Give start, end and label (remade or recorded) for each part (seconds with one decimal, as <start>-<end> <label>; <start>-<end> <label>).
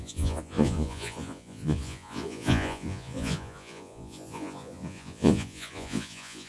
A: 0.0-6.5 remade